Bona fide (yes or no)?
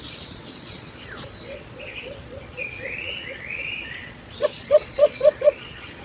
no